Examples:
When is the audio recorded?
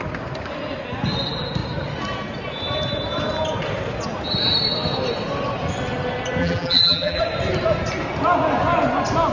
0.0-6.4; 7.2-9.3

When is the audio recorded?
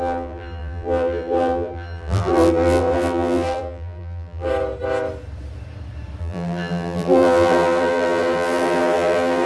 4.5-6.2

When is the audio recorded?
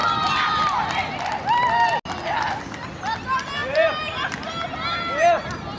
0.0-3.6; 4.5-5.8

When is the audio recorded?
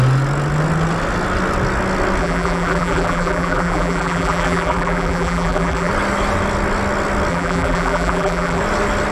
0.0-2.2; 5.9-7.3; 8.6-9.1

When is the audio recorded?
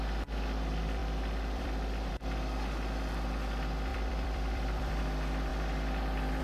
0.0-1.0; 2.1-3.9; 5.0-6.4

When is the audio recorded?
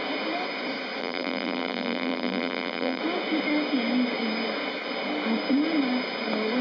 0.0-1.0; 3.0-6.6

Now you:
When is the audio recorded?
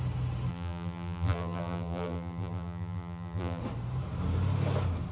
0.0-0.5; 3.6-5.1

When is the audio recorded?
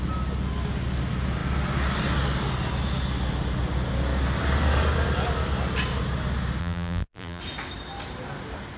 0.0-6.6; 7.4-8.8